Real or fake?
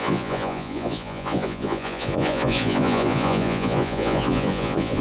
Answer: fake